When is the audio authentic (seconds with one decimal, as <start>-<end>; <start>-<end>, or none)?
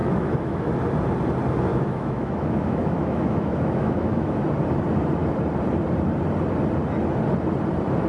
0.7-1.7; 4.4-8.1